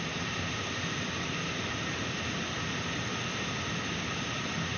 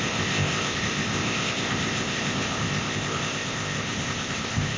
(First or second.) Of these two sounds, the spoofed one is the second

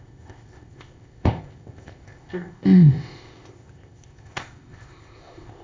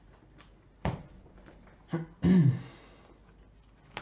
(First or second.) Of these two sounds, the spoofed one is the first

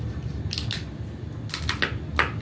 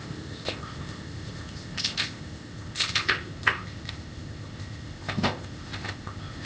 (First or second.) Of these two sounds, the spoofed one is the second